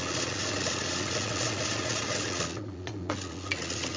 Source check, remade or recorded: remade